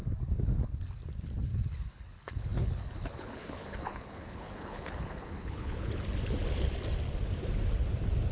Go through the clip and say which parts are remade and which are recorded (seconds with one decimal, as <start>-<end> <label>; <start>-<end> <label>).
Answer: 0.0-1.5 recorded; 1.5-5.9 remade; 5.9-8.3 recorded